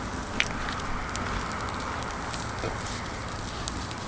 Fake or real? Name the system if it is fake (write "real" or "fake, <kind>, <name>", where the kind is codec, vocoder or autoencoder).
real